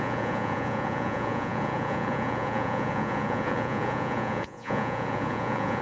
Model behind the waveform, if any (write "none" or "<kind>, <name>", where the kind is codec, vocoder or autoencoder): vocoder, Vocos